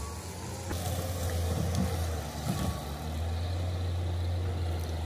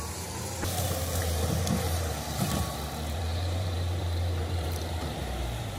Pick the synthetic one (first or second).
second